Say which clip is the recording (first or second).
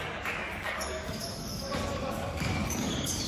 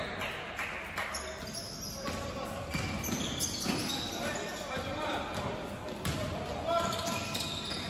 second